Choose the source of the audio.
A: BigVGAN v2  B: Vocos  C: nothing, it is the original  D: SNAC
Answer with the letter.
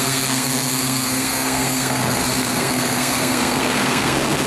D